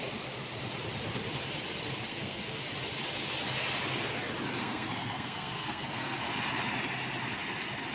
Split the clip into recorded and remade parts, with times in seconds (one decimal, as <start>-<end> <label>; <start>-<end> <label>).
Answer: 0.0-2.1 recorded; 2.1-2.6 remade; 2.6-4.6 recorded; 4.6-6.2 remade; 6.2-7.9 recorded